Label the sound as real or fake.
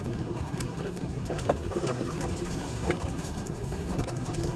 fake